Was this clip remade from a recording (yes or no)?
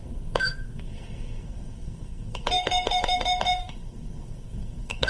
yes